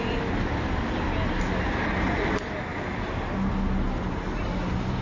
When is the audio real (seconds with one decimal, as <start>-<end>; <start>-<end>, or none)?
0.0-5.0